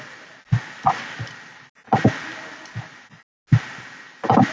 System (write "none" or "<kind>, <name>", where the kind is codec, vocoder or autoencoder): none